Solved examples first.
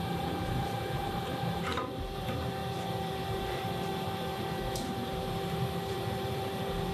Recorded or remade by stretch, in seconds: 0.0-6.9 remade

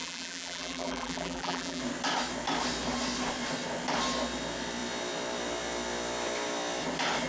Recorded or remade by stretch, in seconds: 0.0-1.8 remade; 1.8-7.3 recorded